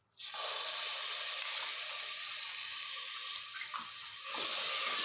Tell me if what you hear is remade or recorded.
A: recorded